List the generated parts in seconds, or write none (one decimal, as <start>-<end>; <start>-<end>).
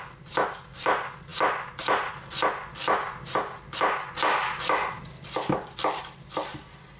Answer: none